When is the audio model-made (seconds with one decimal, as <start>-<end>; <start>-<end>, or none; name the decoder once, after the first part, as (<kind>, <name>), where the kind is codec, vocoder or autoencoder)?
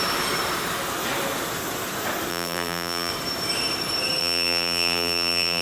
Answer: 2.3-3.1 (vocoder, BigVGAN v2); 4.2-5.6